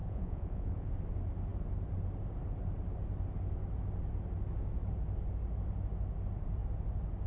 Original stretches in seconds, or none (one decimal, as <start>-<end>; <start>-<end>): 0.9-7.3